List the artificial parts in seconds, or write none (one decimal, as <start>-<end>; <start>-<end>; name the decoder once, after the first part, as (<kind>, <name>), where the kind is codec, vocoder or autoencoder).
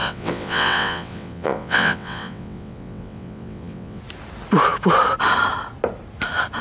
0.0-4.0 (vocoder, WaveNeXt)